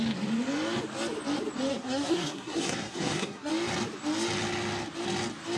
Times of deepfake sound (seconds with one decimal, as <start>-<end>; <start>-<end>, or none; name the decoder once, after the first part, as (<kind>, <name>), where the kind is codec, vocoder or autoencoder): 1.7-3.5 (codec, SNAC)